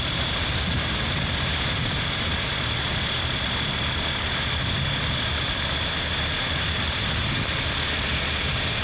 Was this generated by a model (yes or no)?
no